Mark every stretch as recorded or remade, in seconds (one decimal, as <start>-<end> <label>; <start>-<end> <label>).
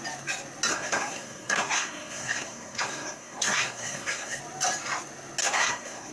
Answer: 0.0-0.7 recorded; 0.7-4.4 remade; 4.4-5.4 recorded; 5.4-6.1 remade